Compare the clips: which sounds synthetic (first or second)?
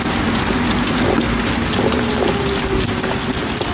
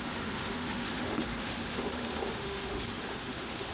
second